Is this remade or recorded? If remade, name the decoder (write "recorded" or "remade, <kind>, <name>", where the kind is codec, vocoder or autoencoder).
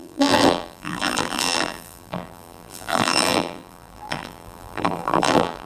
remade, vocoder, BigVGAN v2